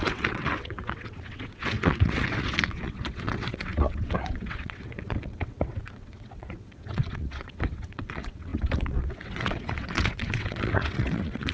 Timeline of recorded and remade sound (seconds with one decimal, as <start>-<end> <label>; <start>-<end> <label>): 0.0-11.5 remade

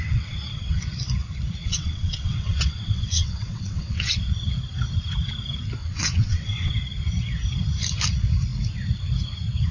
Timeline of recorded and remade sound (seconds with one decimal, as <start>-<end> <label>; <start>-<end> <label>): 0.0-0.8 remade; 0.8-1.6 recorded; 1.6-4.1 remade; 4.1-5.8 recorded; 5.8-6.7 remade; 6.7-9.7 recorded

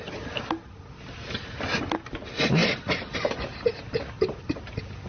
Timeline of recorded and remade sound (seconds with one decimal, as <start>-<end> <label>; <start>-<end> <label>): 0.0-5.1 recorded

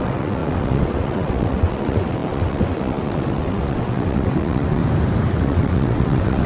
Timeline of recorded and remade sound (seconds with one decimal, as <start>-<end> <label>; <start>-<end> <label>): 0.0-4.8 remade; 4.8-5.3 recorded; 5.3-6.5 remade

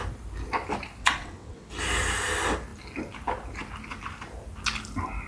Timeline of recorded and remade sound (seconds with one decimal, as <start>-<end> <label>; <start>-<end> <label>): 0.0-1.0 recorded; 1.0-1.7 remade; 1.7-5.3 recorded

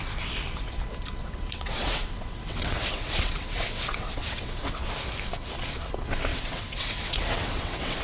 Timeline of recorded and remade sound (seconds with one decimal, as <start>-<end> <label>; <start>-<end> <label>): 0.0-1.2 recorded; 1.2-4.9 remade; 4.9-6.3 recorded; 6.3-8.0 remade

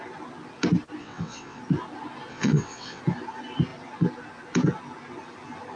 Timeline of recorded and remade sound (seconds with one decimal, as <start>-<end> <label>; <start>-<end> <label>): 0.0-1.0 recorded; 1.0-1.6 remade; 1.6-2.3 recorded; 2.3-3.0 remade; 3.0-5.8 recorded